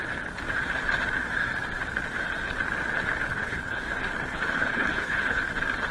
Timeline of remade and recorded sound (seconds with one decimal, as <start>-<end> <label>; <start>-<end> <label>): 0.0-3.3 recorded; 3.3-3.8 remade; 3.8-4.3 recorded; 4.3-5.4 remade; 5.4-5.9 recorded